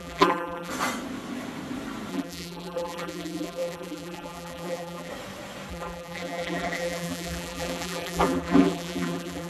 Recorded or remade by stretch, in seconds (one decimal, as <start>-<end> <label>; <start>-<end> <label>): 0.0-0.7 remade; 0.7-2.1 recorded; 2.1-5.1 remade; 5.1-5.7 recorded; 5.7-9.5 remade